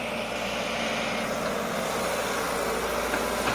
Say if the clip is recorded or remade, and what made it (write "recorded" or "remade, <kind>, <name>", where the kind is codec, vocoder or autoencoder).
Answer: recorded